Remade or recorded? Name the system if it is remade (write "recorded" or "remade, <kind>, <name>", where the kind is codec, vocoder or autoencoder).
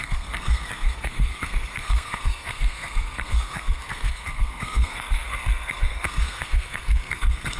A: remade, codec, SNAC